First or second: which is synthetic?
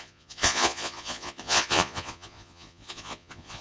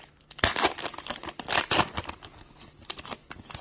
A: first